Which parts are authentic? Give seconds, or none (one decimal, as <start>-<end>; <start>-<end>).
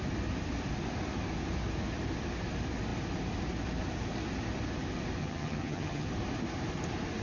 0.0-5.2; 6.1-7.2